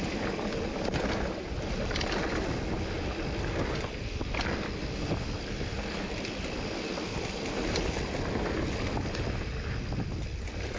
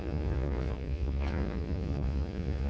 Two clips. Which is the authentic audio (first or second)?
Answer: first